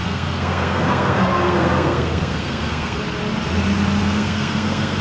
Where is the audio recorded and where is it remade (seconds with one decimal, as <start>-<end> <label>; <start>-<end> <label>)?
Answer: 0.0-3.0 remade; 3.0-4.0 recorded; 4.0-5.0 remade

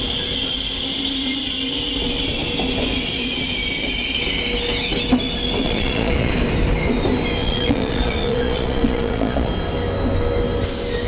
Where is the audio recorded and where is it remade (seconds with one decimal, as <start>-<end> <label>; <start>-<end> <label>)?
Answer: 0.0-5.6 recorded; 5.6-6.3 remade; 6.3-7.4 recorded; 7.4-9.5 remade; 9.5-11.1 recorded

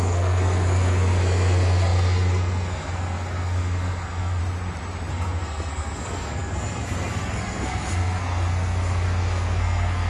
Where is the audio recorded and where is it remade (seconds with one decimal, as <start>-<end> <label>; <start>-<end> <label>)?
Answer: 0.0-4.4 remade; 4.4-5.1 recorded; 5.1-10.1 remade

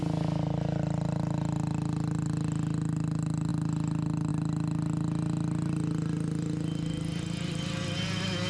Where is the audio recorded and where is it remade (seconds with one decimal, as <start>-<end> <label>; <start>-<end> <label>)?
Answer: 0.0-8.5 recorded

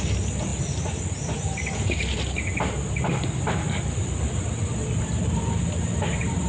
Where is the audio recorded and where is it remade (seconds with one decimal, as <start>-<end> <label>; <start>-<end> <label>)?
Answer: 0.0-6.5 recorded

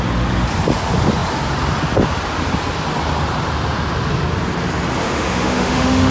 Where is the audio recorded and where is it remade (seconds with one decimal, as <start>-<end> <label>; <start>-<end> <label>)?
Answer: 0.0-5.0 recorded; 5.0-6.1 remade